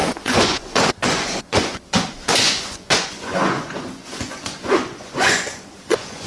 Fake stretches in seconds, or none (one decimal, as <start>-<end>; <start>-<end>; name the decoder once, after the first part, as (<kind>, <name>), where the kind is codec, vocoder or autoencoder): 0.0-6.3 (vocoder, Vocos)